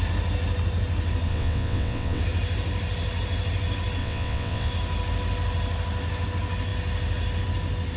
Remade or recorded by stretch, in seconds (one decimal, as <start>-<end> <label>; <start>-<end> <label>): 0.0-1.3 recorded; 1.3-2.2 remade; 2.2-4.0 recorded; 4.0-4.7 remade; 4.7-8.0 recorded